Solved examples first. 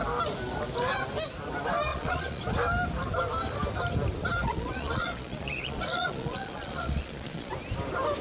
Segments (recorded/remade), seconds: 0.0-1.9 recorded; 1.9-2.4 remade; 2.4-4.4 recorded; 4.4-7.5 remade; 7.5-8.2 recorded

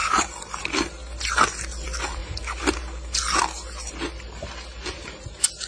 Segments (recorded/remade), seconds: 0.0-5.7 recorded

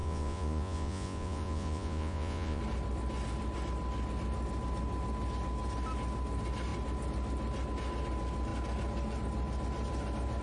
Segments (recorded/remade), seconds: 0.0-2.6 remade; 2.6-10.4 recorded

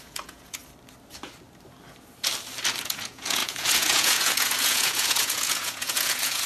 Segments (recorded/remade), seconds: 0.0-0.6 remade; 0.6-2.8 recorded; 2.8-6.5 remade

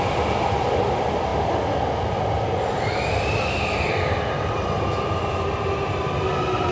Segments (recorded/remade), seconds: 0.0-6.7 recorded

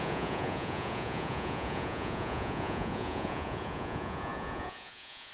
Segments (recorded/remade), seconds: 0.0-5.3 remade

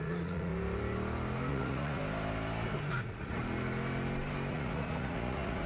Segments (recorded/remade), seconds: 0.0-0.5 remade; 0.5-1.5 recorded; 1.5-2.0 remade; 2.0-2.9 recorded; 2.9-3.4 remade; 3.4-4.5 recorded; 4.5-5.7 remade